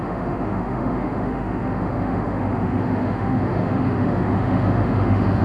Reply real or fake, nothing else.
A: fake